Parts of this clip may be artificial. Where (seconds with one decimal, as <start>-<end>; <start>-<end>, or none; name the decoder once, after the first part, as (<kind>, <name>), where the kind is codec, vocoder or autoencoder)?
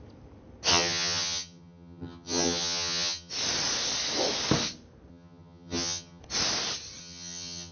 0.7-3.3 (vocoder, HiFi-GAN); 5.1-6.2; 7.0-7.7